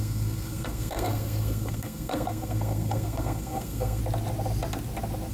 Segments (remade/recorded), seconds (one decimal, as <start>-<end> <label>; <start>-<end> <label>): 0.0-4.0 remade; 4.0-5.3 recorded